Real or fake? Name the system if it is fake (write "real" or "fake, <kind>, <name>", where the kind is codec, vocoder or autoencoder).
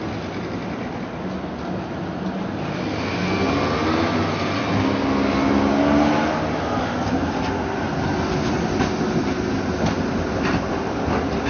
real